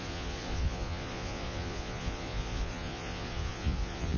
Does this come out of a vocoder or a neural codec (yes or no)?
yes